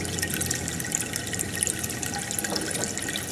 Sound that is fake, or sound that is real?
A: real